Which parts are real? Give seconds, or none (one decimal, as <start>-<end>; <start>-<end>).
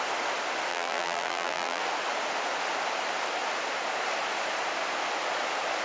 0.0-0.7; 1.8-5.8